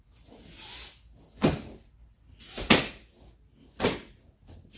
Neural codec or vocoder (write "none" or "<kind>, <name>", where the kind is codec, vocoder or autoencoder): none